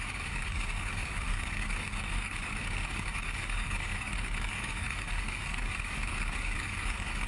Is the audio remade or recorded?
remade